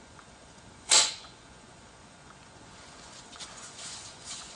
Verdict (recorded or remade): remade